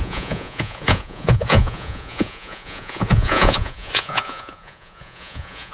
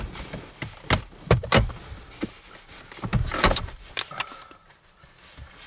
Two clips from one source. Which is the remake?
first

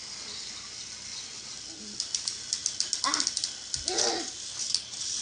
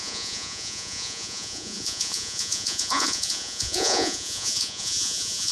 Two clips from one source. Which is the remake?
second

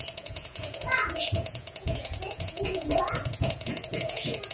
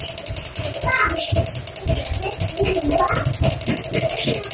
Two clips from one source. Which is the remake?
first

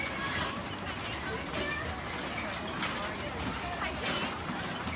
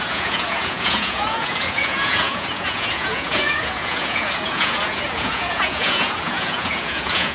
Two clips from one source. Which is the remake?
second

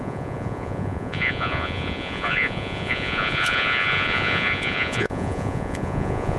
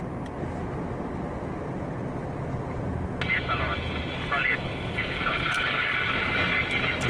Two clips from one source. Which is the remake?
first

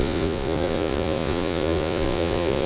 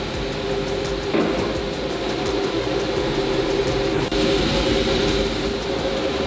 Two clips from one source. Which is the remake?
first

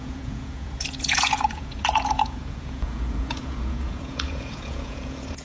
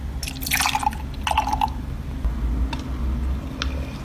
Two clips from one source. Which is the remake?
first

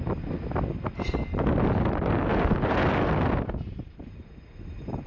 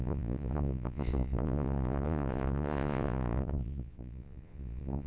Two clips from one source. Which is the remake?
second